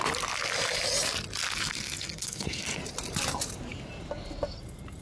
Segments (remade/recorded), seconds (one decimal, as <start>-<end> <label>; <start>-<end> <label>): 0.0-1.6 recorded; 1.6-2.8 remade; 2.8-5.0 recorded